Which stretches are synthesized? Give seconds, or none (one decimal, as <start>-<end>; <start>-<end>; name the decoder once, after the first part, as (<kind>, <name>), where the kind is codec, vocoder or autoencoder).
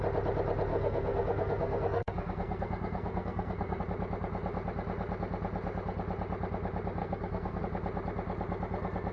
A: 0.7-3.8 (codec, SNAC); 7.0-7.6